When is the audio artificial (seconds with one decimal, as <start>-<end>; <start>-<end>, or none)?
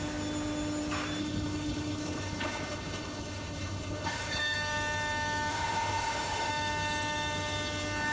1.2-4.4; 5.5-6.5